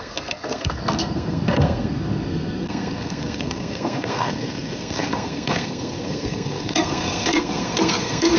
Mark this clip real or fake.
fake